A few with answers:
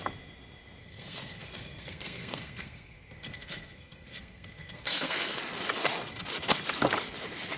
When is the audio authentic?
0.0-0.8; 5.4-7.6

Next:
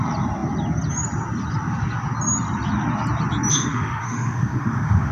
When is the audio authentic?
0.0-3.5

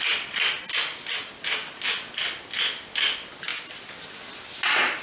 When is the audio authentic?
0.0-5.0